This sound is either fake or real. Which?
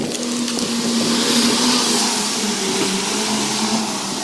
real